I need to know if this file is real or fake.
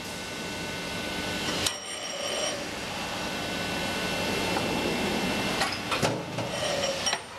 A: real